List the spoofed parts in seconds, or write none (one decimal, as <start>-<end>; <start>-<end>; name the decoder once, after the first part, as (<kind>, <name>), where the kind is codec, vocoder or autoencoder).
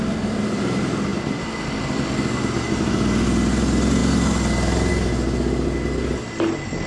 none